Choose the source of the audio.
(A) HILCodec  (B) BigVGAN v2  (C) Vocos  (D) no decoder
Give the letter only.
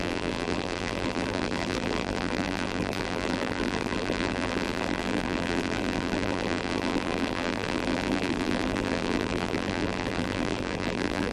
B